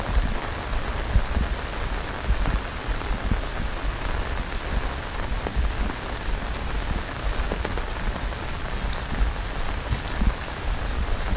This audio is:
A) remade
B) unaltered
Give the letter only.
B